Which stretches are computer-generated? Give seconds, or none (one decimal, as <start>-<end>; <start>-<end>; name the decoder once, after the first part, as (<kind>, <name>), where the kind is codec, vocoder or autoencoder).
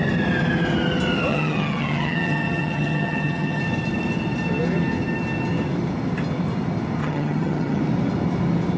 1.3-3.6 (vocoder, HiFi-GAN); 7.0-7.8